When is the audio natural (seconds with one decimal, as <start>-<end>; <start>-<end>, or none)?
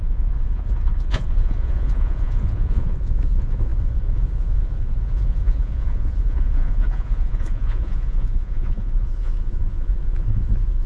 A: none